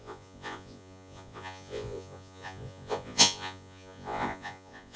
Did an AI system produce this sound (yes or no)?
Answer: yes